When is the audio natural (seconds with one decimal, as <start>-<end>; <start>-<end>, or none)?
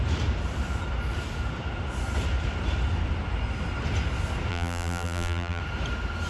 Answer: 0.0-4.5; 5.6-6.3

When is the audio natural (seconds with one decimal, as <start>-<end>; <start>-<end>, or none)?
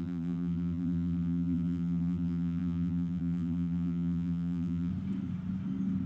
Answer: 4.9-6.1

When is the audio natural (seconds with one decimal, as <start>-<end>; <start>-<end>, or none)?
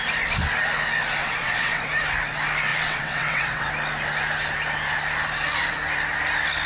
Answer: 0.0-1.2; 1.9-2.7; 3.7-6.7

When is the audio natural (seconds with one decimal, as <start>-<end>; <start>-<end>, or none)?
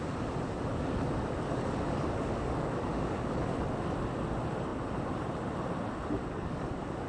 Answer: 0.0-0.7; 3.4-6.2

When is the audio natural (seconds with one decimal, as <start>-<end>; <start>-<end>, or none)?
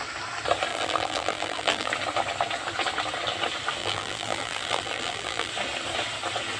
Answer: 0.0-0.7; 1.9-3.8; 5.5-6.6